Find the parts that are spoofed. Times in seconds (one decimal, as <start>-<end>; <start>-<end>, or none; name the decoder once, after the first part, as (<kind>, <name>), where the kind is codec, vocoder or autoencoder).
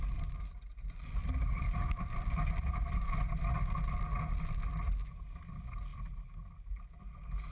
1.2-3.5 (vocoder, BigVGAN v2)